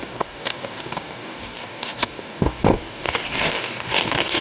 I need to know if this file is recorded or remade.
remade